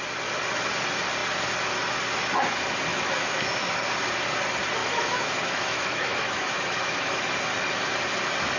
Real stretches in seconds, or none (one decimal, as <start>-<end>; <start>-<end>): 0.0-2.9; 3.8-4.8; 7.3-8.6